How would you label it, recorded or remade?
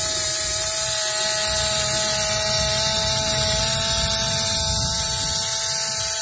recorded